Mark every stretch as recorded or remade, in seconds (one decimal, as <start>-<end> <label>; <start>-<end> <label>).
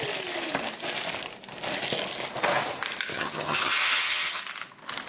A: 0.0-3.1 recorded; 3.1-4.4 remade; 4.4-5.1 recorded